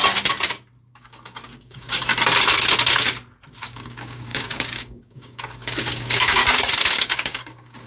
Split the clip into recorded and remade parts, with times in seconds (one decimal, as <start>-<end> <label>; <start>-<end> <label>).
0.0-0.9 recorded; 0.9-2.0 remade; 2.0-3.6 recorded; 3.6-6.4 remade; 6.4-6.9 recorded; 6.9-7.9 remade